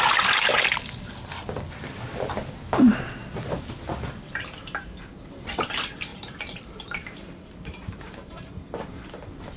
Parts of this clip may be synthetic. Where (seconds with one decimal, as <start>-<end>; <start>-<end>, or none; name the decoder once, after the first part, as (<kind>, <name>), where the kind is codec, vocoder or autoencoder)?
6.1-8.5 (vocoder, BigVGAN v2)